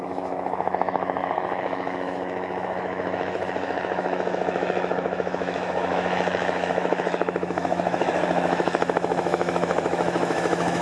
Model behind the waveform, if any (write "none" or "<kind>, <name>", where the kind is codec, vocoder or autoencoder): autoencoder, DAC-VAE